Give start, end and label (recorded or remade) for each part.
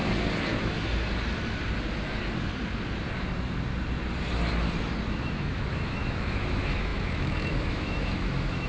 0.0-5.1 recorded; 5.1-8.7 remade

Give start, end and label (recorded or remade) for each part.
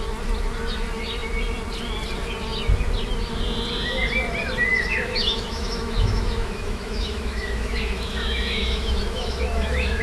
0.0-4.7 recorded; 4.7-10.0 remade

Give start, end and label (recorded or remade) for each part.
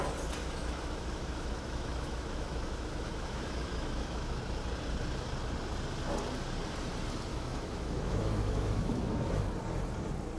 0.0-0.4 recorded; 0.4-4.4 remade; 4.4-7.3 recorded; 7.3-9.4 remade; 9.4-10.4 recorded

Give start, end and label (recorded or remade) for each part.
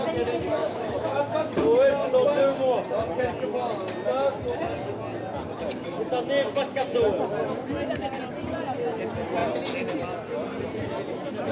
0.0-0.6 recorded; 0.6-1.2 remade; 1.2-11.5 recorded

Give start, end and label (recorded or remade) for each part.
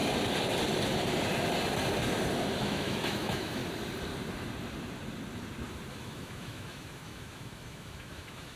0.0-2.6 recorded; 2.6-3.6 remade; 3.6-5.9 recorded; 5.9-8.6 remade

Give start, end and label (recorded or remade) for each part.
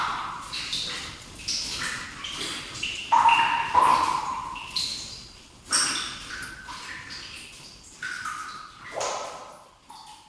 0.0-10.3 recorded